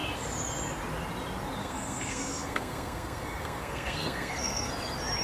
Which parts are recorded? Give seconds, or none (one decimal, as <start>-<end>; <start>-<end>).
0.0-1.6; 4.7-5.2